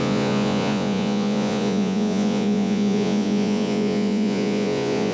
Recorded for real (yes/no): no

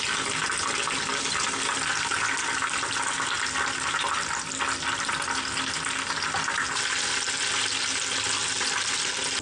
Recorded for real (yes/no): yes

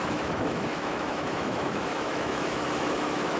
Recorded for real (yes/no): no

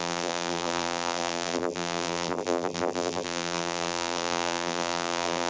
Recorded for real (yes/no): no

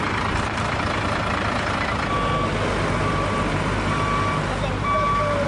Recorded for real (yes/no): yes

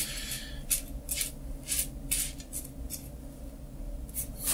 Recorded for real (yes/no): yes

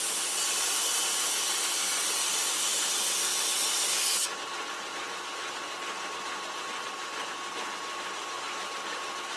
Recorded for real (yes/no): yes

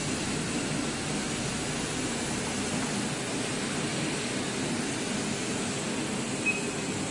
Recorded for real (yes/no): yes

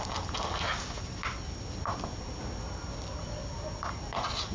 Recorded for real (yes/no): yes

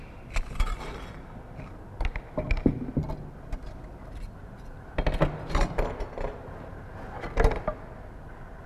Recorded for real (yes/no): yes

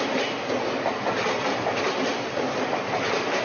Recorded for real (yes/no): yes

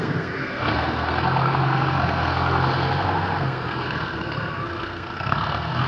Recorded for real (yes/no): no